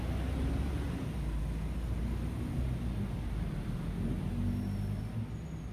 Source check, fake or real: real